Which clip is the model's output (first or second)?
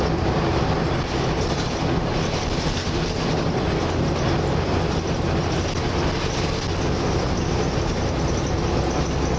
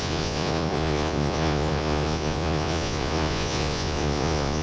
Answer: second